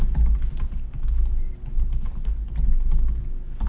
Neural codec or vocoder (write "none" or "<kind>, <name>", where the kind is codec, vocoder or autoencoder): none